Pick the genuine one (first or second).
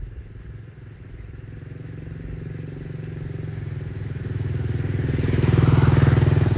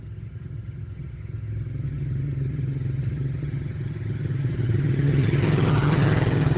first